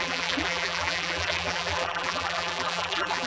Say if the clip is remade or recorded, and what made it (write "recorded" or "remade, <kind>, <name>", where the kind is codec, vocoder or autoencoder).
remade, vocoder, BigVGAN v2